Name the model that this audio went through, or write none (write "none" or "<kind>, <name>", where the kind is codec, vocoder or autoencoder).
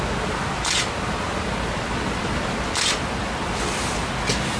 none